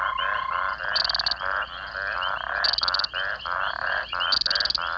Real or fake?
real